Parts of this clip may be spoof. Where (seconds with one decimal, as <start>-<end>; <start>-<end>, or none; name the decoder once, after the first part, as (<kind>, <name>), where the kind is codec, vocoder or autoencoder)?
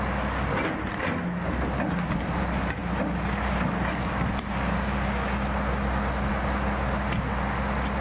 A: none